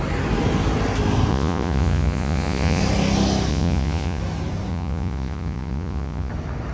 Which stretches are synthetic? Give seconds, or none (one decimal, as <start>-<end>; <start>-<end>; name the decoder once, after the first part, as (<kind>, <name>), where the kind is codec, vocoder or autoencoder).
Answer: 1.3-2.8 (vocoder, Vocos); 3.5-4.2; 4.7-6.3